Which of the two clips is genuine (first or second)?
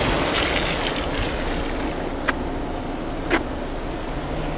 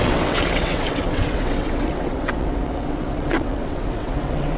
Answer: first